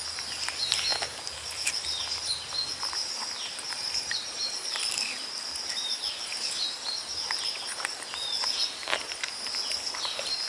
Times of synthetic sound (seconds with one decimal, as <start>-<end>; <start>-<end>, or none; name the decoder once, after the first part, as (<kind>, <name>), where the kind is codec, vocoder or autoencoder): 3.0-3.9 (vocoder, BigVGAN v2); 8.8-9.4